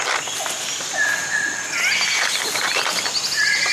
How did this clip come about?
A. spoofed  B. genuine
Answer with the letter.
B